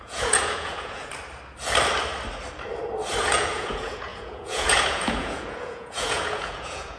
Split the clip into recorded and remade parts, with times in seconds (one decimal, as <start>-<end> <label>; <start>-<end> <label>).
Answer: 0.0-1.1 remade; 1.1-3.2 recorded; 3.2-7.0 remade